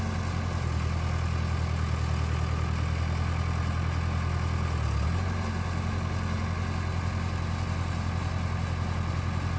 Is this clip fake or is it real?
real